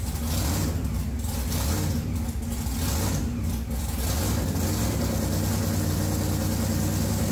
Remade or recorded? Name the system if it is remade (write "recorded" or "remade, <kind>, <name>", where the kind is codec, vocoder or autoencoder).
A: recorded